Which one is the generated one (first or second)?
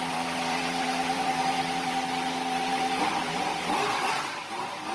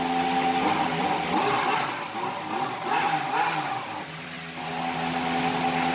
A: first